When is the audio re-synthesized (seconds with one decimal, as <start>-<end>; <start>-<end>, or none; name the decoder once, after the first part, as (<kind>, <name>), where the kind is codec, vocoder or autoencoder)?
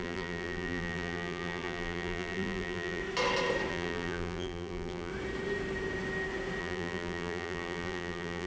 0.0-3.0 (vocoder, BigVGAN v2); 3.7-5.1; 6.6-8.5